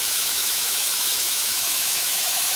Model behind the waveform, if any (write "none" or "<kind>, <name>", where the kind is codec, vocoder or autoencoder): autoencoder, DAC-VAE